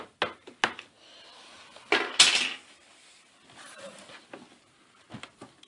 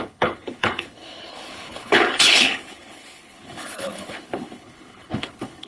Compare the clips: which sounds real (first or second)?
first